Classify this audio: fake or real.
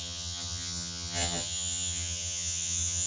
fake